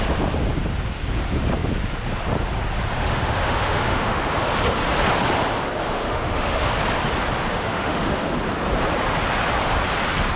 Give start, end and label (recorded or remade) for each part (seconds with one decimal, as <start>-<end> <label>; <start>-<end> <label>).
0.0-3.0 recorded; 3.0-4.2 remade; 4.2-5.8 recorded; 5.8-6.7 remade; 6.7-7.5 recorded; 7.5-8.2 remade; 8.2-10.4 recorded